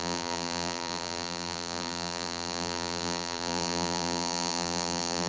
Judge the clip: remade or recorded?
remade